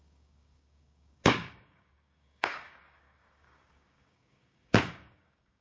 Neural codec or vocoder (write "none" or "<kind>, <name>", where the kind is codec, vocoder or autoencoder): codec, DAC